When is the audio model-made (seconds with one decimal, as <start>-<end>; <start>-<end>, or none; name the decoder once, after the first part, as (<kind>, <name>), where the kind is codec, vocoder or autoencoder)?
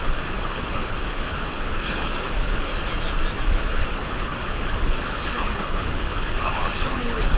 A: 0.0-2.7 (codec, HILCodec); 3.4-7.4